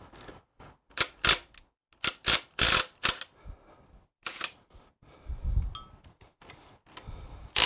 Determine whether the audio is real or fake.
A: real